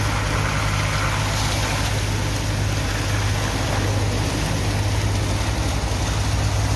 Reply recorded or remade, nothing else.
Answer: recorded